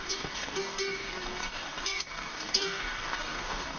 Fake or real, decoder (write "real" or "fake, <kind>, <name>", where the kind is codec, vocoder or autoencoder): fake, codec, DAC